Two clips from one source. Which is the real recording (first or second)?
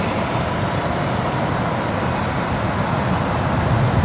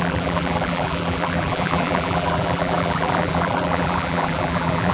first